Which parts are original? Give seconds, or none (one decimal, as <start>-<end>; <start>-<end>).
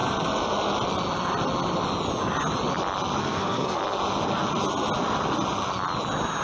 0.0-3.2; 3.8-6.4